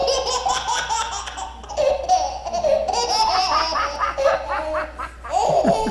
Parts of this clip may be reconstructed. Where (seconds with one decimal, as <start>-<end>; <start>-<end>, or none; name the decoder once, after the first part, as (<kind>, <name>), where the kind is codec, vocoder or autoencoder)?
none